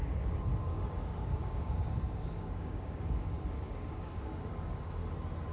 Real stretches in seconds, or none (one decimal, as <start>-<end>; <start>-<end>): 5.0-5.5